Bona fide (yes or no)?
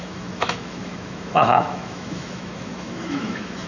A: no